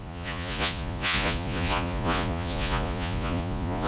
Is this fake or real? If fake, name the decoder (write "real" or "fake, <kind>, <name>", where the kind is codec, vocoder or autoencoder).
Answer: fake, vocoder, Vocos